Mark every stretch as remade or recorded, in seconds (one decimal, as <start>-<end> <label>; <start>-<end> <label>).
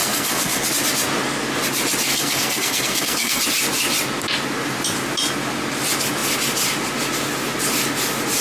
0.0-0.7 remade; 0.7-2.1 recorded; 2.1-3.4 remade; 3.4-8.4 recorded